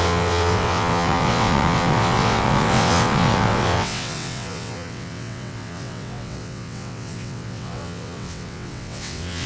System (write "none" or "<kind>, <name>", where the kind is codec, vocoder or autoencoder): vocoder, WaveNeXt